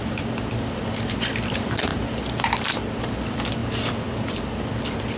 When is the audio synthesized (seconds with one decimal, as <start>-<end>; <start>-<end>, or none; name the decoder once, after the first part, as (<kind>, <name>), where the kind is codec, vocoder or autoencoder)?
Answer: none